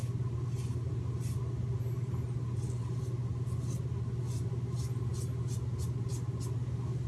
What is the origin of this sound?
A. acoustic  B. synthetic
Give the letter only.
A